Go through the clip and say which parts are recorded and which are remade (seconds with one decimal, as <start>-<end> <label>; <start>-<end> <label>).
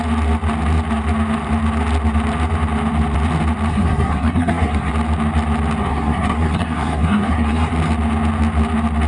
0.0-3.7 recorded; 3.7-4.9 remade; 4.9-5.8 recorded; 5.8-7.7 remade; 7.7-9.1 recorded